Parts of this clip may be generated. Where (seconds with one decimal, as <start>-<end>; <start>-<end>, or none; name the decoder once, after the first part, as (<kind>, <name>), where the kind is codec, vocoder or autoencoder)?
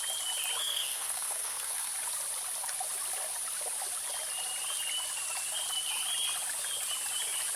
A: 0.6-1.9 (codec, SNAC)